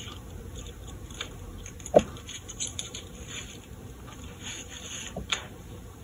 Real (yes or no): no